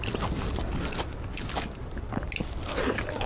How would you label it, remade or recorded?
recorded